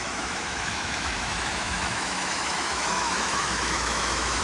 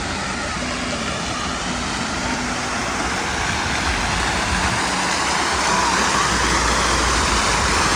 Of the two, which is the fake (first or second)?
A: first